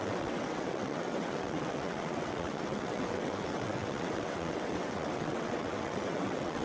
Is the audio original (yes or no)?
no